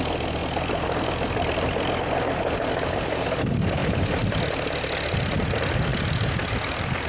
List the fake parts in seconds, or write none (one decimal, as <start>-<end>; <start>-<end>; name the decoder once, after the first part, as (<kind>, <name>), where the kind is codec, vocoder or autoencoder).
none